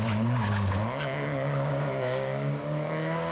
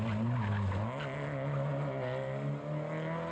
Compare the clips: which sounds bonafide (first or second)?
second